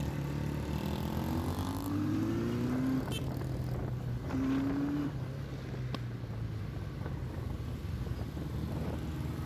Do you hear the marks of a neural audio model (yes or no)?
no